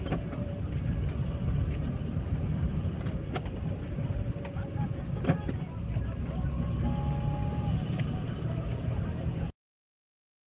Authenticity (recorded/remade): recorded